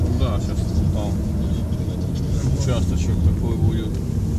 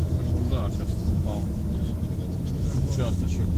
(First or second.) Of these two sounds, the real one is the first